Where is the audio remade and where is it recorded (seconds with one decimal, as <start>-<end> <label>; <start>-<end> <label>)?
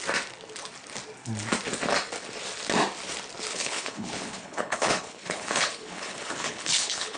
0.0-3.5 recorded; 3.5-7.2 remade